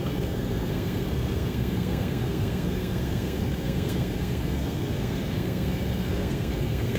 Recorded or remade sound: remade